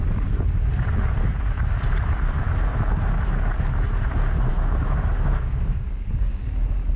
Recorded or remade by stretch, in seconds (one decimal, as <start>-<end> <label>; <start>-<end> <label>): 0.0-4.5 recorded; 4.5-6.5 remade; 6.5-7.0 recorded